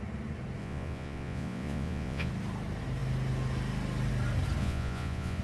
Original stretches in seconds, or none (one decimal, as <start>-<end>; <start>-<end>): 0.0-0.6; 2.3-4.6